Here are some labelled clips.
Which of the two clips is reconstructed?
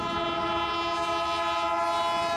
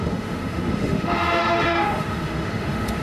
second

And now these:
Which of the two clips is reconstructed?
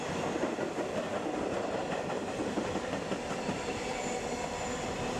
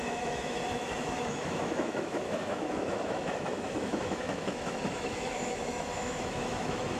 second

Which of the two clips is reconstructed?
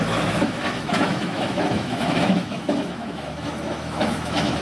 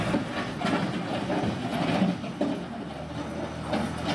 first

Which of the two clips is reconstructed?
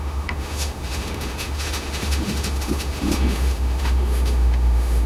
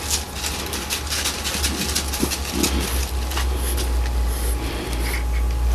first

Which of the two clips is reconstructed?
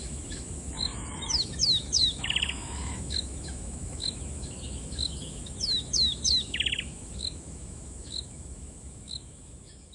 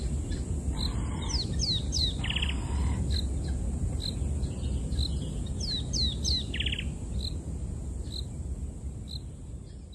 first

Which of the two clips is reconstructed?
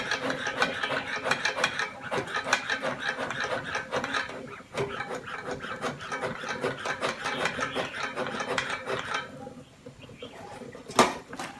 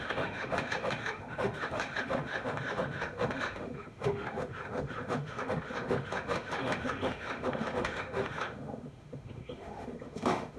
second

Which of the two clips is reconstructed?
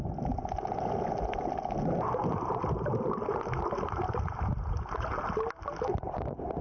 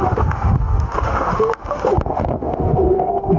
second